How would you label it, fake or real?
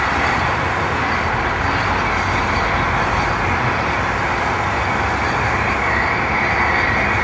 real